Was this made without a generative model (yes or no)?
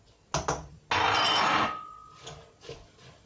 yes